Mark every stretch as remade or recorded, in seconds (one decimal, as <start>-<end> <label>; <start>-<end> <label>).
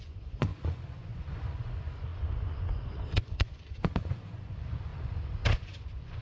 0.0-6.2 remade